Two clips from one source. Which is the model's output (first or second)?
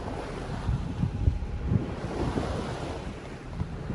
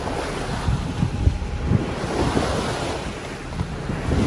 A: first